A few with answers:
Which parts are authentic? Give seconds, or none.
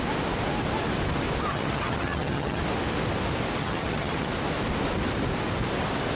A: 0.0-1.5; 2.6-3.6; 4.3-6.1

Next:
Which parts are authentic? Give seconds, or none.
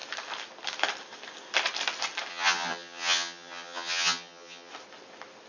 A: 0.0-2.3; 4.7-5.5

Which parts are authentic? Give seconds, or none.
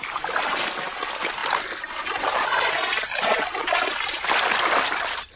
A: 0.0-5.4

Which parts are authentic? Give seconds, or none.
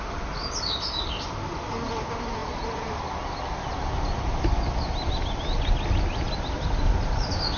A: 0.0-7.6